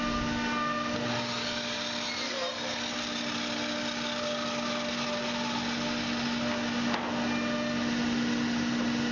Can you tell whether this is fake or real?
real